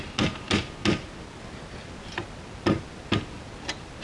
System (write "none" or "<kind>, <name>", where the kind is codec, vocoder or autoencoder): none